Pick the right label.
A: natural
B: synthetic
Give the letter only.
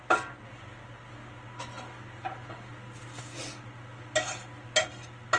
A